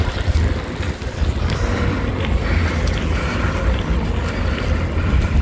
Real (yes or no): yes